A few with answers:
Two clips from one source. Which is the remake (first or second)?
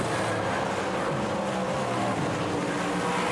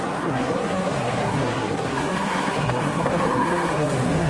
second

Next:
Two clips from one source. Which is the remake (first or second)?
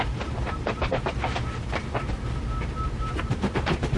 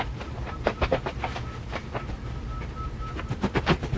first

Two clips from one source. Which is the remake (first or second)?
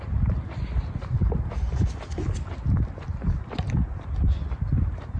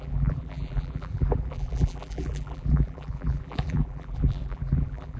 second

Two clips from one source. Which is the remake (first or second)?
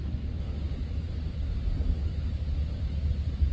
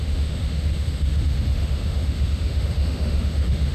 second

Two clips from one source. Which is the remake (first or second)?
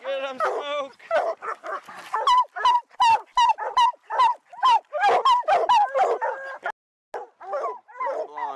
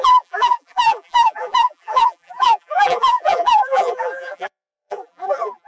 second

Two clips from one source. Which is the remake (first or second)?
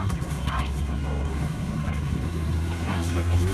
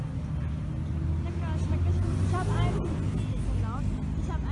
first